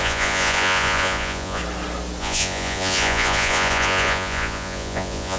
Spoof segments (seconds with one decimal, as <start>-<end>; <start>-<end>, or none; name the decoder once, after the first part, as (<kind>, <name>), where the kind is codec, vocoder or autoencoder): 0.0-1.6 (vocoder, Vocos); 2.2-5.4